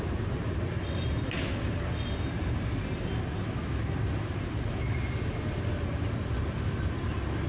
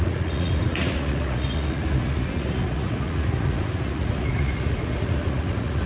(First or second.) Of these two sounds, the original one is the first